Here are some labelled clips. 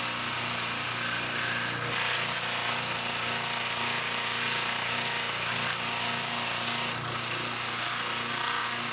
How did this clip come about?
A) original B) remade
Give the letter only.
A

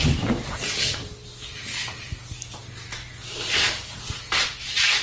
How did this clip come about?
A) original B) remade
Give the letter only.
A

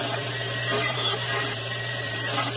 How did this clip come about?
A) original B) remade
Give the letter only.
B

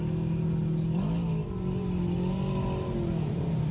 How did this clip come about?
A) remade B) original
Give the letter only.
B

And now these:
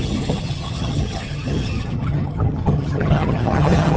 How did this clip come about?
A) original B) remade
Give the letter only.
B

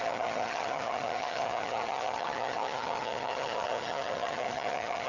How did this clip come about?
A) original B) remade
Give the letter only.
B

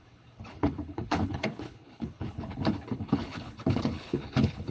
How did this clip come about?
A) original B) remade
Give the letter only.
B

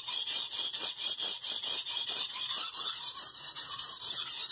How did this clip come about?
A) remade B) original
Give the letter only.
A